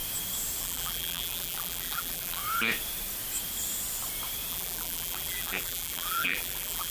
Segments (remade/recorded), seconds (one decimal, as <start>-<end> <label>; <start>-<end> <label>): 0.0-0.6 recorded; 0.6-2.4 remade; 2.4-4.5 recorded; 4.5-6.9 remade